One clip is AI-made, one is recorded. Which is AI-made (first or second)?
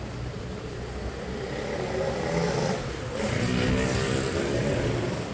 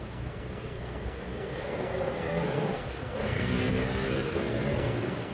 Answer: second